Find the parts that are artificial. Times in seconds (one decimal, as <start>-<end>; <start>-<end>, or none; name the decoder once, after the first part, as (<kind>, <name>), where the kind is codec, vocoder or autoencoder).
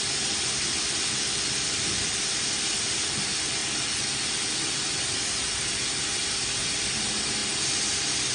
0.0-3.6 (vocoder, BigVGAN v2); 4.6-7.4